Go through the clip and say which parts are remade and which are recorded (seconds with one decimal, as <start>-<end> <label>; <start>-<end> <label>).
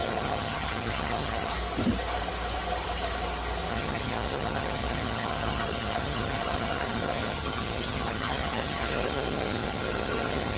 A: 0.0-1.5 remade; 1.5-3.7 recorded; 3.7-10.6 remade